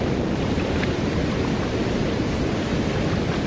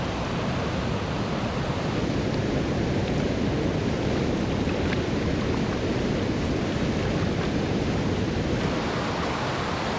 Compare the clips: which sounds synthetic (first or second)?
first